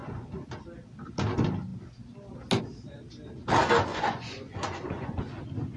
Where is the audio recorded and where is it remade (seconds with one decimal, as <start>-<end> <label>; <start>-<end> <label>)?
0.0-0.5 remade; 0.5-3.9 recorded; 3.9-5.2 remade; 5.2-5.8 recorded